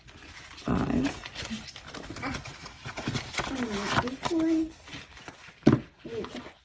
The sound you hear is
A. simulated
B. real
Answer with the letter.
B